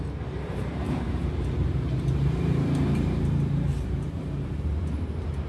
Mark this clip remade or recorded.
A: remade